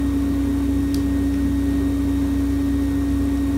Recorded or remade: recorded